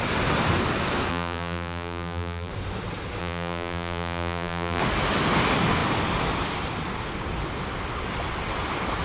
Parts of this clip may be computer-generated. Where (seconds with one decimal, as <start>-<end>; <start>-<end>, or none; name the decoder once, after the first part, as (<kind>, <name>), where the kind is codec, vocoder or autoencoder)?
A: 1.1-2.5 (vocoder, BigVGAN v2); 3.2-4.8